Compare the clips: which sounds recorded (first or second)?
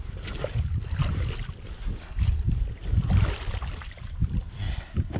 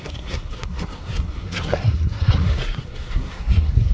first